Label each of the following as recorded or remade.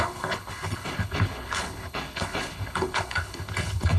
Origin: remade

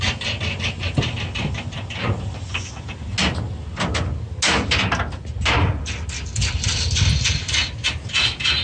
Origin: recorded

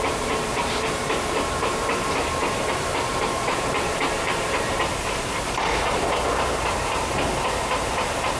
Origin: remade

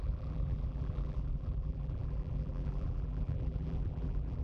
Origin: remade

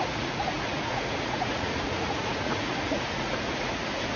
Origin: remade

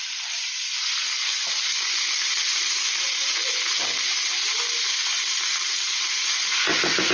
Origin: recorded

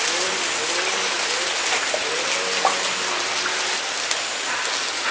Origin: recorded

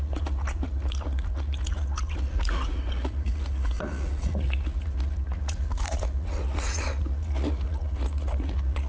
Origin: remade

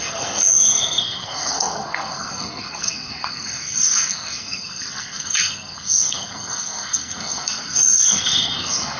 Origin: remade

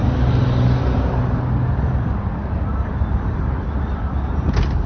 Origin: recorded